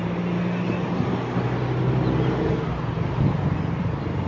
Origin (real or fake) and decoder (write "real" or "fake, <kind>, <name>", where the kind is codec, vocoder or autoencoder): real